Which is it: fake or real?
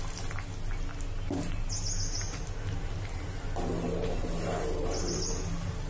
real